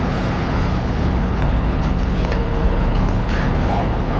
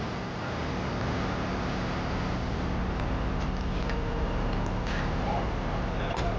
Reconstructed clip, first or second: first